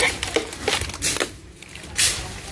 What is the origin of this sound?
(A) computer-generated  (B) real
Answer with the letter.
B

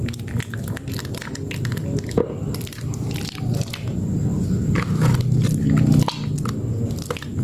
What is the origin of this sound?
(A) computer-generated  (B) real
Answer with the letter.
B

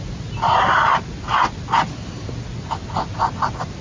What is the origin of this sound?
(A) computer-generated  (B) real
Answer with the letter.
B